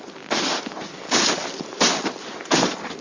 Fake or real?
real